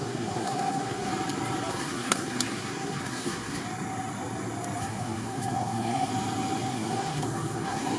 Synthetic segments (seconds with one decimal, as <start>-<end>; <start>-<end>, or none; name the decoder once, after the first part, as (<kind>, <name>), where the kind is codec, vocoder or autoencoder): 0.0-1.1 (codec, SNAC); 1.7-3.6; 4.8-6.1; 6.7-8.0